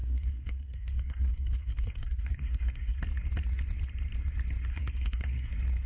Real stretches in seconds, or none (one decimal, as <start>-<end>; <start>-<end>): 3.0-4.7; 5.5-5.9